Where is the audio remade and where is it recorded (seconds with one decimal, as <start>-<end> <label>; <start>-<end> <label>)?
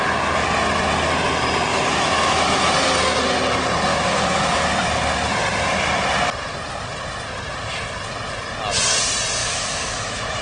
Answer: 0.0-1.7 recorded; 1.7-2.7 remade; 2.7-3.9 recorded; 3.9-4.7 remade; 4.7-9.4 recorded; 9.4-10.4 remade